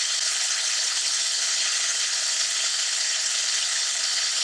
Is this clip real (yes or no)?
no